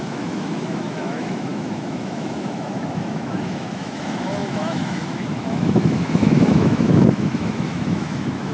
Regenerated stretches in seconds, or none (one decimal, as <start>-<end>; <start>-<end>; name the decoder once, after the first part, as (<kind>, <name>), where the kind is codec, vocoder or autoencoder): 0.0-8.5 (autoencoder, DAC-VAE)